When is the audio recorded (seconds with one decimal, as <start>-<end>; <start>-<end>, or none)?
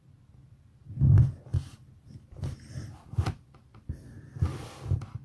0.0-5.2